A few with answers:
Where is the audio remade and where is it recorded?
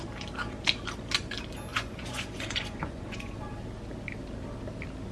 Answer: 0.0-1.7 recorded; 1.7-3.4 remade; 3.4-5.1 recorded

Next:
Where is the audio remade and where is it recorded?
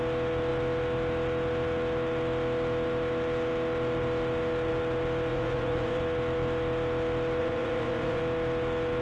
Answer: 0.0-5.3 recorded; 5.3-6.0 remade; 6.0-7.4 recorded; 7.4-8.2 remade; 8.2-9.0 recorded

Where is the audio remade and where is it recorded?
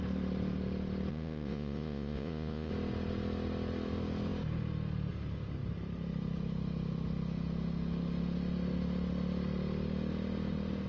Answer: 0.0-1.1 recorded; 1.1-2.7 remade; 2.7-10.9 recorded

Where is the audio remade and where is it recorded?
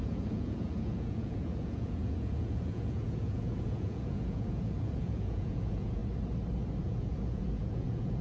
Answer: 0.0-6.0 remade; 6.0-6.8 recorded; 6.8-8.2 remade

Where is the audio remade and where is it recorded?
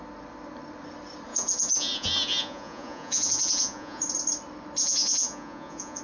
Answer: 0.0-1.3 recorded; 1.3-4.0 remade; 4.0-4.8 recorded; 4.8-6.0 remade